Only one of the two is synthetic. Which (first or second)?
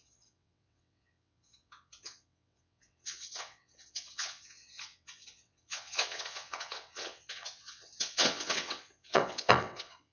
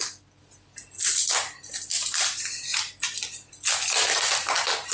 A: first